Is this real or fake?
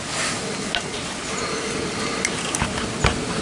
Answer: real